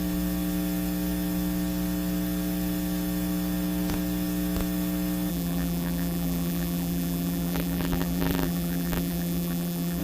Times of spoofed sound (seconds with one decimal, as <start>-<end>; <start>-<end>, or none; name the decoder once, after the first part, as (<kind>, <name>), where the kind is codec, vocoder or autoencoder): 5.3-10.0 (vocoder, BigVGAN v2)